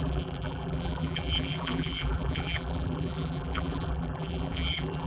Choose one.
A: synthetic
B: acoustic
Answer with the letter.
A